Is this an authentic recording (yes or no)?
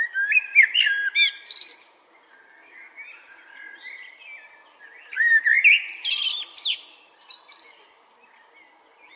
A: yes